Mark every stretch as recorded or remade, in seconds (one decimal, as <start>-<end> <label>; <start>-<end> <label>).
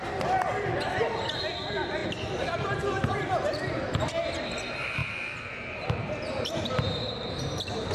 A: 0.0-5.0 recorded; 5.0-7.9 remade